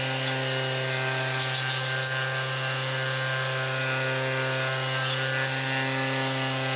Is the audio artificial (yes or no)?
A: no